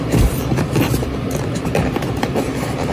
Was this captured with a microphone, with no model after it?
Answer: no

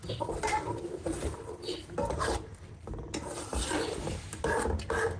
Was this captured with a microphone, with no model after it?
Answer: yes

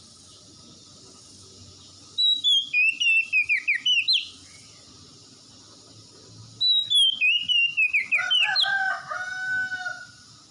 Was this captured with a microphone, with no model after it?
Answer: yes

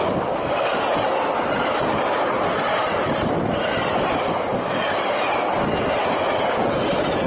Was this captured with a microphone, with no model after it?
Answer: yes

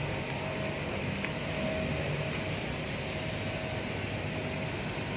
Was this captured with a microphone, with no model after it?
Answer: yes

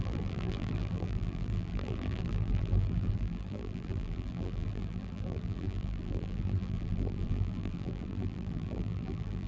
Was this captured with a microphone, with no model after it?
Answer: no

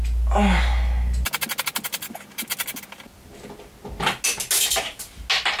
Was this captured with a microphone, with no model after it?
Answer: yes